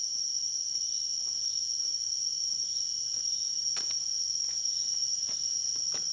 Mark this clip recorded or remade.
recorded